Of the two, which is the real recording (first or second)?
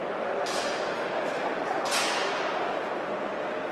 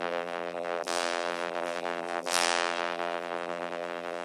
first